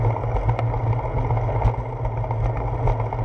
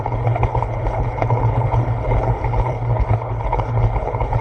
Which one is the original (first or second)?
first